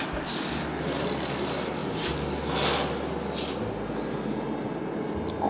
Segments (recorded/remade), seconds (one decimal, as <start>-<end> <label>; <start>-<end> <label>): 0.0-5.5 recorded